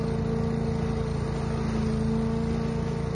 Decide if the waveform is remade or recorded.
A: recorded